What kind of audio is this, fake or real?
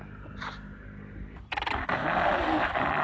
real